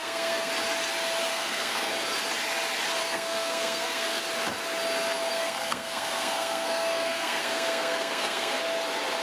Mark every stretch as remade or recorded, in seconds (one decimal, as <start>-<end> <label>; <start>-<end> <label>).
0.0-0.5 remade; 0.5-1.3 recorded; 1.3-1.9 remade; 1.9-3.0 recorded; 3.0-4.2 remade; 4.2-5.3 recorded; 5.3-8.6 remade; 8.6-9.2 recorded